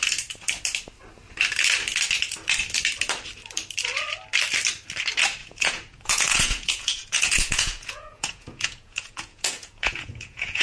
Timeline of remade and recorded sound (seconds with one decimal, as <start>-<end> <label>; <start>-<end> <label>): 0.0-5.4 recorded; 5.4-10.6 remade